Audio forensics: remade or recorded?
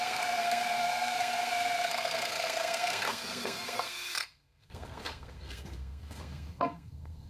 remade